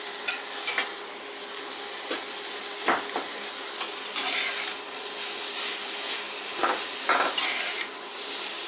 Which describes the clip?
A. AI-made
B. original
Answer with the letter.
B